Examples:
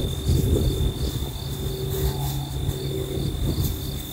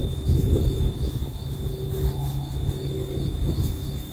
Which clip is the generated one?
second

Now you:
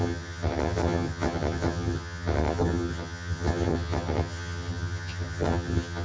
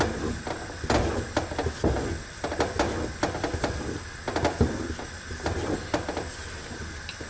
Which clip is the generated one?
first